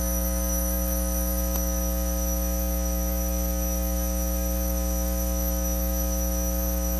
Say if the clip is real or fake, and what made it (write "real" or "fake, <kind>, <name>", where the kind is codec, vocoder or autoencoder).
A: fake, autoencoder, DAC-VAE